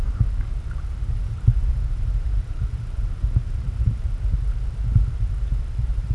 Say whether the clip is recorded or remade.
remade